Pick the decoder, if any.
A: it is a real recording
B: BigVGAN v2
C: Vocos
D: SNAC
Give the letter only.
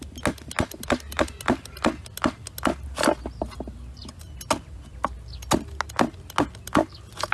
A